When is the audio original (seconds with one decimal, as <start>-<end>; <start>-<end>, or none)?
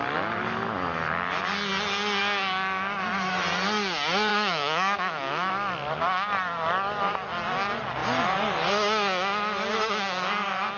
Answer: 0.0-4.3; 5.5-10.8